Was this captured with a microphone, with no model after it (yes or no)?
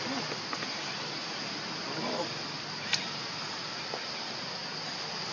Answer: yes